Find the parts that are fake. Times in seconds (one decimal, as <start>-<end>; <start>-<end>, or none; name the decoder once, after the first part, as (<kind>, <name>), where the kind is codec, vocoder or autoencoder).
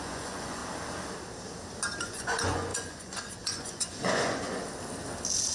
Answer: 0.0-0.6 (vocoder, Vocos); 2.0-4.6